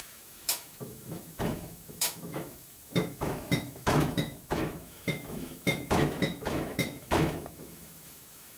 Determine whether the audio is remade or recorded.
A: remade